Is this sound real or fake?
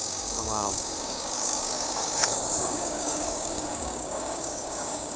fake